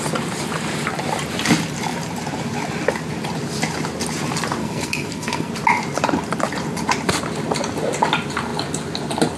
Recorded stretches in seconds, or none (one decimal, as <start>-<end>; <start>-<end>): 0.0-4.6; 5.5-9.4